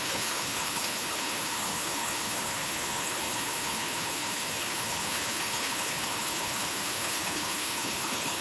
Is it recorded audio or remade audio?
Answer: remade